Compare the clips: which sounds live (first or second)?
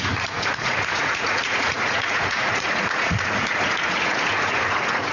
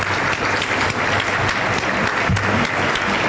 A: second